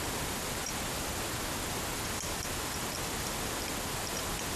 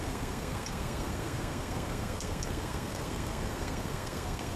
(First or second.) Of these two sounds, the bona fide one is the first